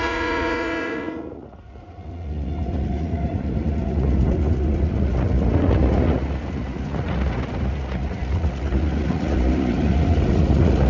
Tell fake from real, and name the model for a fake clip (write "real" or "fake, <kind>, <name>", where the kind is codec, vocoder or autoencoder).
fake, vocoder, Vocos